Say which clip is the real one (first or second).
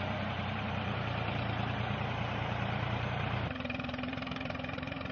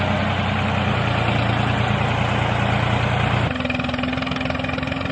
second